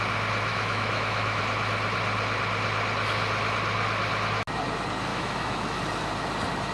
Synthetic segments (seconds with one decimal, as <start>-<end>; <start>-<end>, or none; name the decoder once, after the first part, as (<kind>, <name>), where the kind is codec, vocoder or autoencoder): 0.5-1.4 (autoencoder, DAC-VAE); 5.1-5.8